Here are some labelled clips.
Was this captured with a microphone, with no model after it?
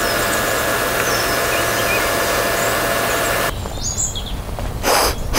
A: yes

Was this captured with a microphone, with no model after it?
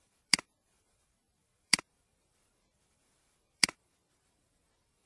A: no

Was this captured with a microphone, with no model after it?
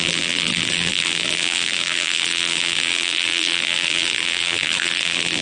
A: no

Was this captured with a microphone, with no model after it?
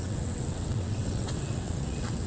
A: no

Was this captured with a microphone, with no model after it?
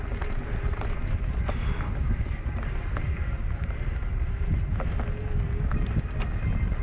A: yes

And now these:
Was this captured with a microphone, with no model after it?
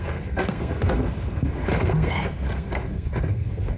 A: no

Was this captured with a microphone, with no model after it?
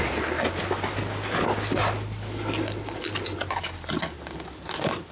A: yes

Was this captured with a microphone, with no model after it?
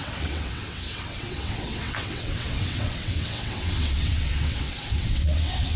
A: no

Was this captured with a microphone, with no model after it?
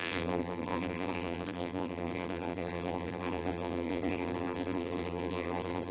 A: no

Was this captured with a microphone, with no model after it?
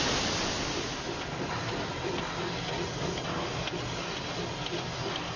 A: yes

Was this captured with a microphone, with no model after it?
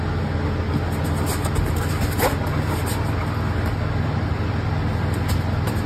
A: yes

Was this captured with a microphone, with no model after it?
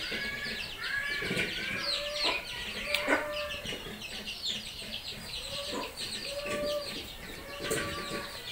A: no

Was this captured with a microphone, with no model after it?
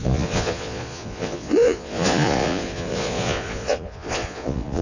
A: no